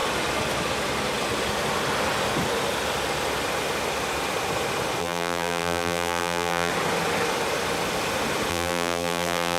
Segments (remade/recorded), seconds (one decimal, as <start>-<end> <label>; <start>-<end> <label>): 0.0-5.0 recorded; 5.0-6.7 remade; 6.7-8.5 recorded; 8.5-9.6 remade